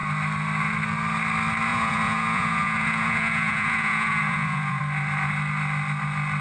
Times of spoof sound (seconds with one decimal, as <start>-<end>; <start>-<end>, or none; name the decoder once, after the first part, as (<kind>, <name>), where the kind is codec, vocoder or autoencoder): 1.7-4.8 (vocoder, Vocos)